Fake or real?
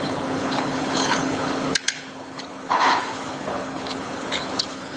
fake